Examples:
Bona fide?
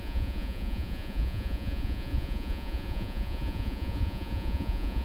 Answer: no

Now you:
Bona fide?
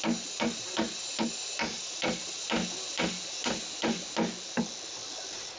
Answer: yes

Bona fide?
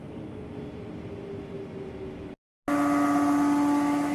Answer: yes